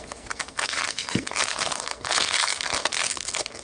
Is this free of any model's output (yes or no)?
no